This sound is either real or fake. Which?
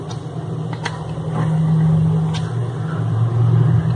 real